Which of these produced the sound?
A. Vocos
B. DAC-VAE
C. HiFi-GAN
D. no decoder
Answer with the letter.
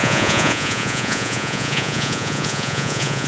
A